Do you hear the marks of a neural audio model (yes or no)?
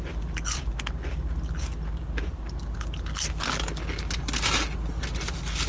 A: no